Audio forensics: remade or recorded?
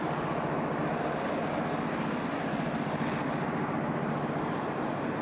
recorded